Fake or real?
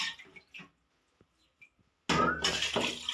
real